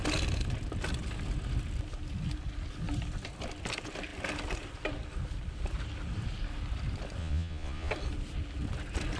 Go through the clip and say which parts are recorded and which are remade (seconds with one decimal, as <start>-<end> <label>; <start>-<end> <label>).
0.0-7.2 recorded; 7.2-7.9 remade; 7.9-9.2 recorded